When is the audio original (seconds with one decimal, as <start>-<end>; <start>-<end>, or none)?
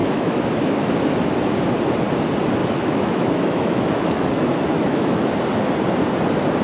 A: 0.9-2.6; 5.3-6.6